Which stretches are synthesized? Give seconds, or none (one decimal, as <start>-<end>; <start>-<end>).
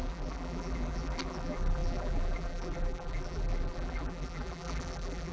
0.0-5.3